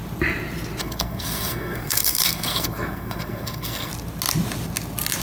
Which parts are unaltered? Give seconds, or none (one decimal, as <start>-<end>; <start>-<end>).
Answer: 0.0-0.8; 3.9-5.2